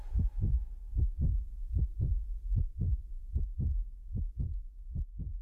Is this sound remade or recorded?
recorded